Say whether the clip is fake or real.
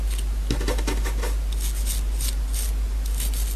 real